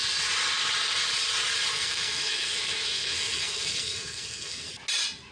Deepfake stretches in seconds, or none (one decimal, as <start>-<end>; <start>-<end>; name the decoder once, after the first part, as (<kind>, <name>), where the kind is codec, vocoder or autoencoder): 1.7-4.7 (codec, SNAC)

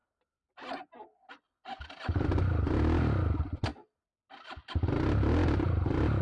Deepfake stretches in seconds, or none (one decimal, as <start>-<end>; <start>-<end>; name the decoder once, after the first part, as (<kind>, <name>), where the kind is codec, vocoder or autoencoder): none

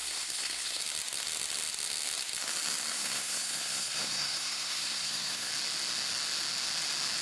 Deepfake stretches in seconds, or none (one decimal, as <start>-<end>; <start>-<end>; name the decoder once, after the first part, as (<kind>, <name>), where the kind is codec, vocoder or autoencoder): 0.0-0.8 (codec, SNAC); 2.9-5.5

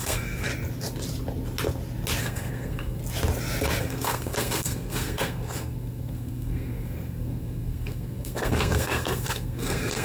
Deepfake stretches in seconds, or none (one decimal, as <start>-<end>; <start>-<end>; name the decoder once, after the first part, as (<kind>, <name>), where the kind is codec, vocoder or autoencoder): 0.0-0.5 (codec, SNAC); 2.2-3.0; 3.8-10.0

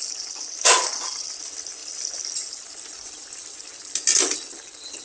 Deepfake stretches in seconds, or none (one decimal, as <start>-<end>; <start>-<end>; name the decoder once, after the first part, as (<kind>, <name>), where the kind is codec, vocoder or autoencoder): none

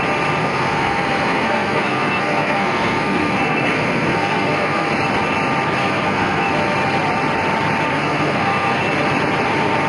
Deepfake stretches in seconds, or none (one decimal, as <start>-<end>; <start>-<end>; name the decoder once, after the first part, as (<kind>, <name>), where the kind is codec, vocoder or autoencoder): 0.4-4.9 (codec, SNAC); 5.8-6.5; 7.9-8.8

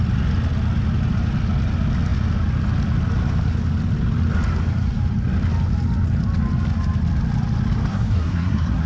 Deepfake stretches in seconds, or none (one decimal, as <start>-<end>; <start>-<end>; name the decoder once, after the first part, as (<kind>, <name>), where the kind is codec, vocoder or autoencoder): 7.9-8.9 (codec, SNAC)

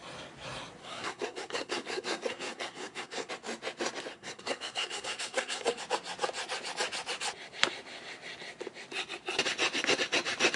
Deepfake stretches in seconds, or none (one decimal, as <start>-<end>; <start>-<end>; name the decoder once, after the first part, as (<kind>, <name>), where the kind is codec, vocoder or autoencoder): 0.8-3.3 (codec, SNAC); 4.1-5.8